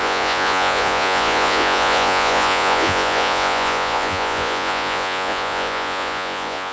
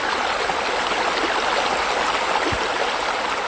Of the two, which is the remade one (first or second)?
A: first